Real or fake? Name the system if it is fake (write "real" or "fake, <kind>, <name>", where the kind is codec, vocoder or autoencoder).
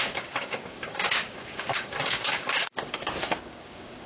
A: fake, codec, DAC